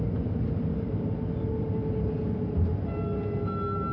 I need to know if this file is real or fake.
real